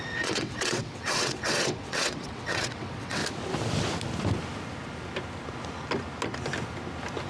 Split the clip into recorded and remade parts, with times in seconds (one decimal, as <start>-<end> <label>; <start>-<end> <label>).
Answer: 0.0-3.2 remade; 3.2-7.3 recorded